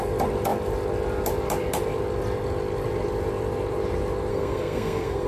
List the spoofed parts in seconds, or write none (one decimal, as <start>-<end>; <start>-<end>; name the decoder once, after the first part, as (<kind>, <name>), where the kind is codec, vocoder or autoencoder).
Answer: 4.3-5.3 (codec, SNAC)